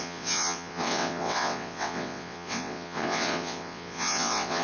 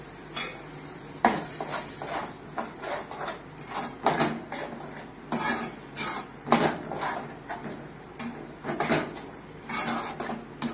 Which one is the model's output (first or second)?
first